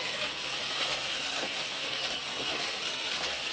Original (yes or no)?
no